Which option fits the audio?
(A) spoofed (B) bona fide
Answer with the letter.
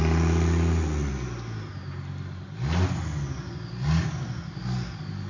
B